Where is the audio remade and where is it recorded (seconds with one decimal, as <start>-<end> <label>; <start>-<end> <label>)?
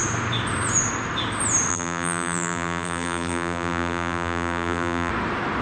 0.0-1.7 recorded; 1.7-5.1 remade; 5.1-5.6 recorded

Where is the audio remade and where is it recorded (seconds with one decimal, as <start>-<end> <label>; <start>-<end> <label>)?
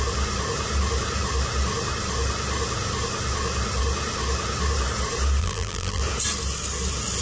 0.0-5.4 recorded; 5.4-6.0 remade; 6.0-7.2 recorded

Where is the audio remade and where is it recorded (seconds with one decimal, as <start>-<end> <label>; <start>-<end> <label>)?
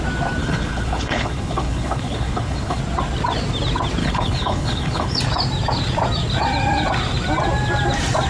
0.0-0.4 recorded; 0.4-2.8 remade; 2.8-4.0 recorded; 4.0-5.2 remade; 5.2-8.3 recorded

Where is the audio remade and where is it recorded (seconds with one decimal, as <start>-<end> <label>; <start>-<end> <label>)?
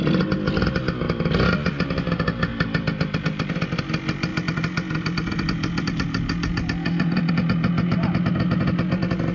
0.0-2.5 recorded; 2.5-3.8 remade; 3.8-9.3 recorded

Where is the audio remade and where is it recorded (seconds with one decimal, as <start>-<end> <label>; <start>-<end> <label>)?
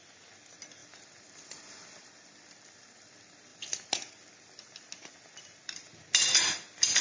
0.0-7.0 recorded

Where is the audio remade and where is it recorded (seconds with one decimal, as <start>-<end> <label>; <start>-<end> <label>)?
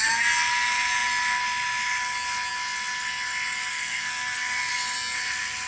0.0-3.7 recorded; 3.7-4.7 remade; 4.7-5.7 recorded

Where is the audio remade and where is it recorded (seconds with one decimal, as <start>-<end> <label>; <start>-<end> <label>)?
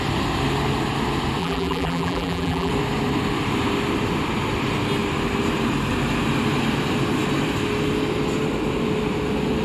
0.0-1.4 recorded; 1.4-2.7 remade; 2.7-9.6 recorded